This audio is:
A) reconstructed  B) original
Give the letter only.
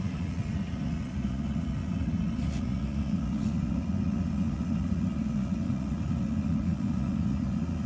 A